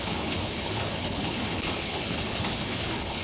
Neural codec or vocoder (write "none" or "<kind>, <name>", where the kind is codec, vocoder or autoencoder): codec, HILCodec